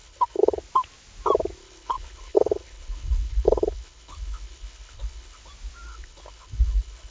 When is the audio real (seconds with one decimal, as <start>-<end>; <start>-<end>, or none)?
0.6-1.6; 5.4-5.9